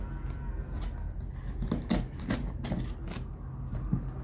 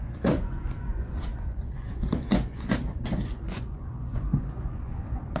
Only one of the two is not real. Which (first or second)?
second